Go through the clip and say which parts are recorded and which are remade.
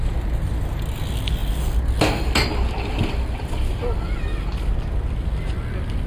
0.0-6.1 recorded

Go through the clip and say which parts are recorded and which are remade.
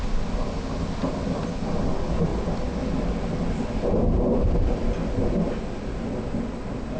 0.0-7.0 recorded